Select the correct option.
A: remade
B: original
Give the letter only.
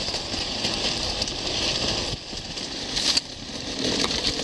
B